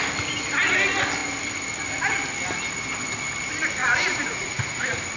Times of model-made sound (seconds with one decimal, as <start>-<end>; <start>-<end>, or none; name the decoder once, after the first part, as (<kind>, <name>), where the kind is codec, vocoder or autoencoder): 3.8-4.8 (vocoder, Vocos)